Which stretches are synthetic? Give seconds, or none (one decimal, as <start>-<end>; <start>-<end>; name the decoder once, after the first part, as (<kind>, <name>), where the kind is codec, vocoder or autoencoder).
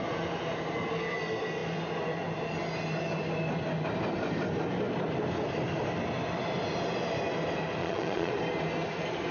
7.8-8.3 (vocoder, Vocos)